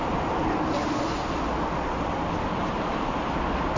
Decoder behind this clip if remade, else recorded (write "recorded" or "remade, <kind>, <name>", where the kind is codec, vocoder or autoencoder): recorded